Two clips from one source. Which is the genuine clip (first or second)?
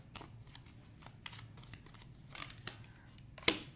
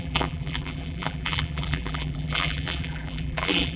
first